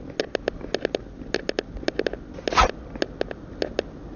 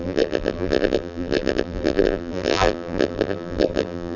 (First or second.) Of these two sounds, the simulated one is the second